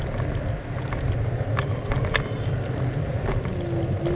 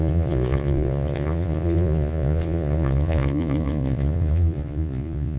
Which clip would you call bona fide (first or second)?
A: first